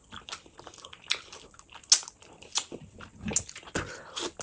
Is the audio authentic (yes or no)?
yes